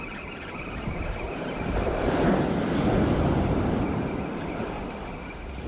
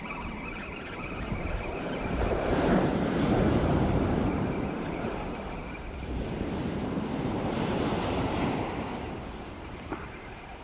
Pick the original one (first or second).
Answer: first